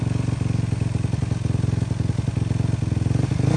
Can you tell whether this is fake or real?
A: real